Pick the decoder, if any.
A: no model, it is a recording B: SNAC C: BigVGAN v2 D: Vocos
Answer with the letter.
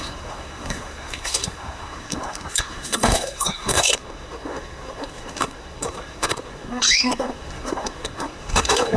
B